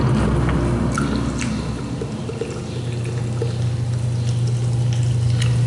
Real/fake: real